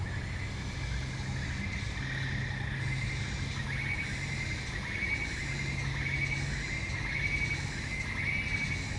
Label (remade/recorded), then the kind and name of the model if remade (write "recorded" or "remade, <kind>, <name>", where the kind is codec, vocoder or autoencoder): recorded